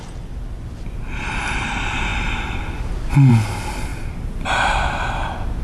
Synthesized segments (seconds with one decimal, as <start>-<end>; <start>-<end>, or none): 3.9-4.9